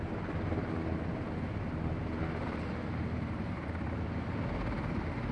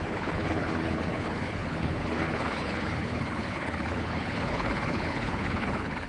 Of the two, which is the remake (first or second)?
second